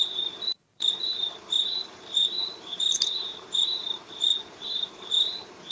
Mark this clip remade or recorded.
remade